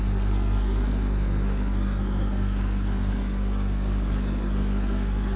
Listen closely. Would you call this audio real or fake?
fake